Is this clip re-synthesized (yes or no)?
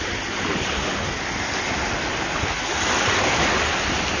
no